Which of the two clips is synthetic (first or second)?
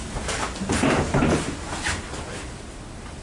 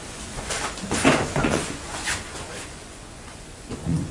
second